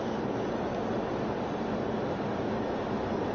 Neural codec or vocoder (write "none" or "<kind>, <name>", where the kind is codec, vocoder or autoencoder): none